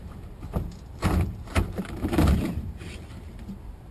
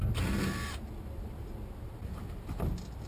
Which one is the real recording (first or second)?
second